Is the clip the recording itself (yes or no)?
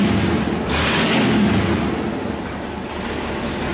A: yes